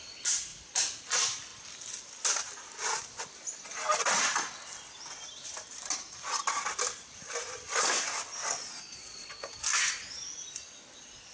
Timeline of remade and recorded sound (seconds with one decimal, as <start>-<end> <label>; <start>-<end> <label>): 0.0-8.6 recorded; 8.6-9.5 remade; 9.5-11.3 recorded